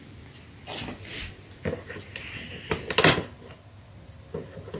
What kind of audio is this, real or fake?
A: real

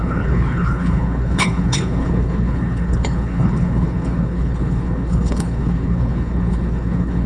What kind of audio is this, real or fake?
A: fake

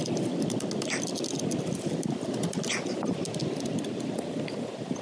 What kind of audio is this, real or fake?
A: real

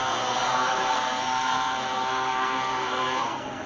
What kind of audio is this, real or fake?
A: fake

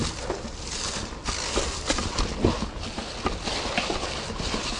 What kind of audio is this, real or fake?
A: real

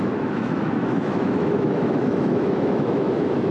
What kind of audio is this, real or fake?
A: fake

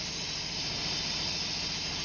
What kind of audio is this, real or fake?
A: real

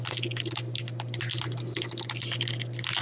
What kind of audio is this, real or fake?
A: real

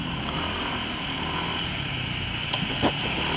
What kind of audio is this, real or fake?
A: real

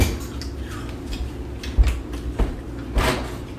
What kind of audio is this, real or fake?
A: real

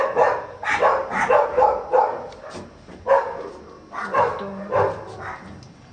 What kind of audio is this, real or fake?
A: real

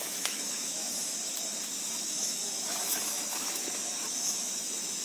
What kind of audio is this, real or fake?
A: fake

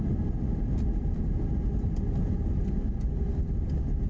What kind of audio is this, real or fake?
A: real